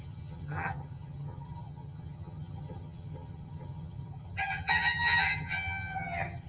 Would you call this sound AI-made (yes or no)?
yes